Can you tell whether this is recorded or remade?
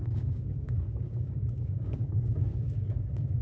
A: remade